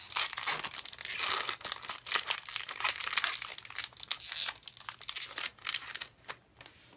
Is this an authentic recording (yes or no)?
yes